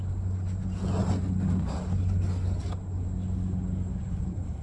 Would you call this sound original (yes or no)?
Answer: yes